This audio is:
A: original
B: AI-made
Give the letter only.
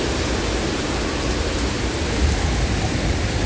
A